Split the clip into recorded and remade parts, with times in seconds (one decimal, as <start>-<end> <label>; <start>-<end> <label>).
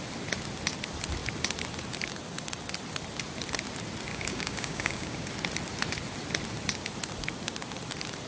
0.0-4.1 recorded; 4.1-5.3 remade; 5.3-8.3 recorded